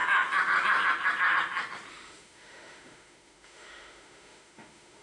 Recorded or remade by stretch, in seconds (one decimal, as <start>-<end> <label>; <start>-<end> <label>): 0.0-1.9 recorded; 1.9-5.0 remade